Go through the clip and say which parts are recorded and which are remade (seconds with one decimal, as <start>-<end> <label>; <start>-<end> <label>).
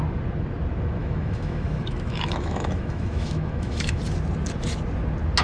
0.0-1.0 recorded; 1.0-4.0 remade; 4.0-5.4 recorded